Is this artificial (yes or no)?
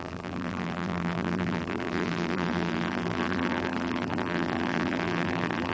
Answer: yes